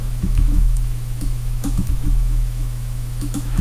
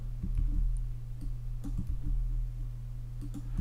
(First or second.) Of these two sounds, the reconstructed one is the first